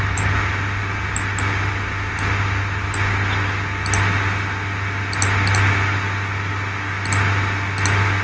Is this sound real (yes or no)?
yes